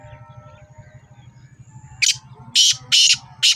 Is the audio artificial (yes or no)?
no